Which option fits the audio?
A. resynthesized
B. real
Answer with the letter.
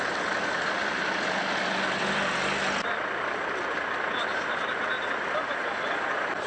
B